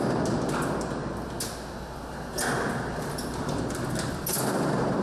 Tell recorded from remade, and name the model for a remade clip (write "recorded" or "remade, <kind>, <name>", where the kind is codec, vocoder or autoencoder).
recorded